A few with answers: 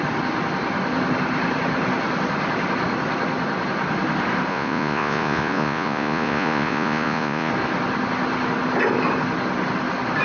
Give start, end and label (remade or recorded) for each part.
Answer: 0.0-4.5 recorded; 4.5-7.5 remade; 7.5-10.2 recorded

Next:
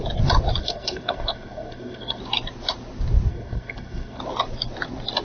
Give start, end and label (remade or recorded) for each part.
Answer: 0.0-0.6 recorded; 0.6-2.2 remade; 2.2-3.3 recorded; 3.3-4.2 remade; 4.2-5.2 recorded

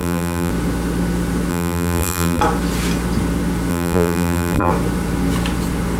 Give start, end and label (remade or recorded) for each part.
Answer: 0.0-0.5 remade; 0.5-1.5 recorded; 1.5-2.4 remade; 2.4-3.7 recorded; 3.7-4.7 remade; 4.7-6.0 recorded

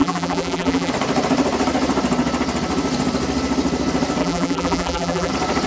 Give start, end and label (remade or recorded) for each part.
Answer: 0.0-0.9 remade; 0.9-4.2 recorded; 4.2-5.3 remade; 5.3-5.7 recorded

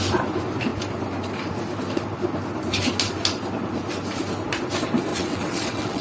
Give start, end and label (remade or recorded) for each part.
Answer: 0.0-5.1 recorded; 5.1-6.0 remade

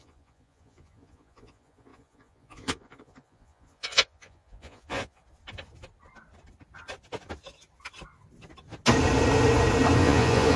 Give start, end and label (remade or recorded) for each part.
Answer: 0.0-5.2 remade; 5.2-10.0 recorded; 10.0-10.6 remade

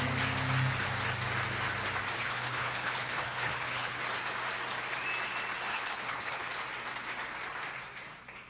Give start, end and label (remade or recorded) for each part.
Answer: 0.0-2.2 recorded; 2.2-4.0 remade; 4.0-5.7 recorded; 5.7-6.5 remade; 6.5-8.5 recorded